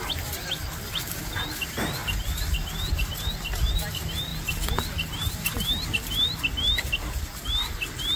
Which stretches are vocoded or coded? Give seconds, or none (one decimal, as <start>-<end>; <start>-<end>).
none